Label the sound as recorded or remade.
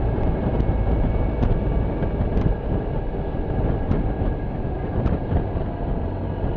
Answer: recorded